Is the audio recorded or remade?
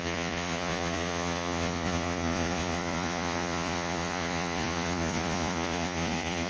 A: remade